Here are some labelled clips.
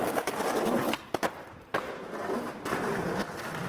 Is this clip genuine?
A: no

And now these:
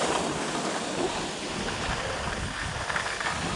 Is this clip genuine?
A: yes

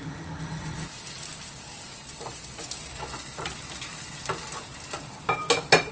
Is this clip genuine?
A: no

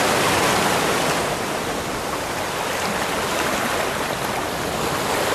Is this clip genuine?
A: yes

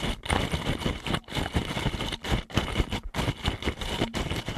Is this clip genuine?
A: yes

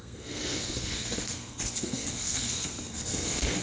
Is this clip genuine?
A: no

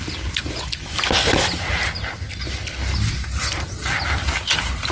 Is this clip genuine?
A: yes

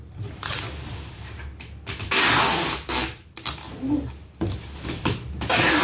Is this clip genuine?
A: yes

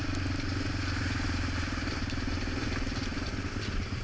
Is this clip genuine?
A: yes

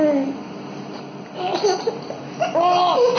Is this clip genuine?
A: yes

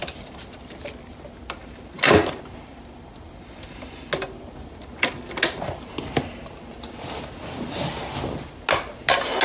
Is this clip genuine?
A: yes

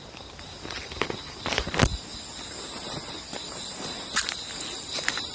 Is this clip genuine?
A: yes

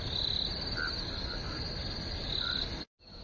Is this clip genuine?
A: yes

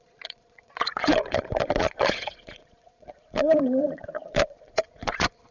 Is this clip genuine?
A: no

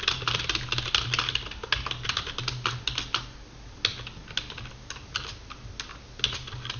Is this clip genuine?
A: yes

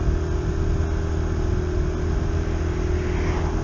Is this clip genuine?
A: yes